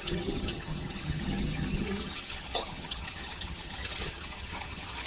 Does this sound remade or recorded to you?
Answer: remade